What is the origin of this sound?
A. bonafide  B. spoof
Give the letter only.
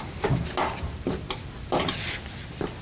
A